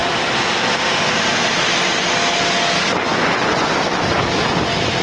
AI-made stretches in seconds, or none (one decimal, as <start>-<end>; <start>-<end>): 3.1-3.7